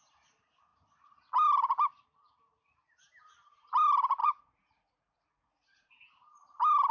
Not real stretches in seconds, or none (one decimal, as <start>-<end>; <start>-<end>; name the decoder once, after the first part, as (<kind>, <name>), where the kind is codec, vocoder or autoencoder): 4.2-6.1 (vocoder, Vocos)